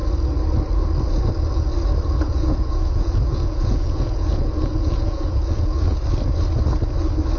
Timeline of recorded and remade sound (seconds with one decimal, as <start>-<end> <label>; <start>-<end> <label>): 0.0-2.3 recorded; 2.3-6.0 remade; 6.0-7.4 recorded